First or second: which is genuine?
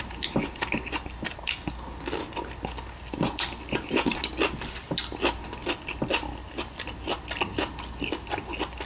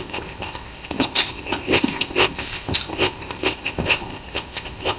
first